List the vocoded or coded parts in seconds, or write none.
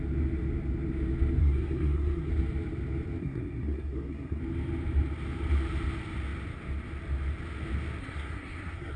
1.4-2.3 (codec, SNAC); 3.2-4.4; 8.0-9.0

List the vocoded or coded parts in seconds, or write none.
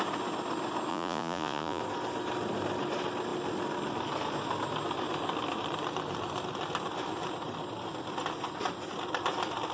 0.9-1.8 (vocoder, Vocos)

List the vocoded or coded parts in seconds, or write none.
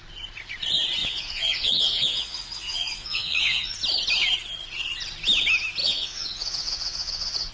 1.0-3.7 (vocoder, Vocos); 5.8-7.5